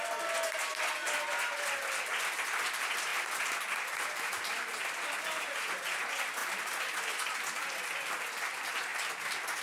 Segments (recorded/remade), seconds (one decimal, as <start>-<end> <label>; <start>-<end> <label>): 0.0-9.6 recorded